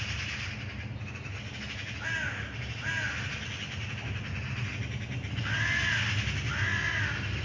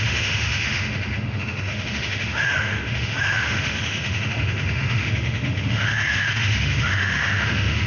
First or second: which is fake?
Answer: second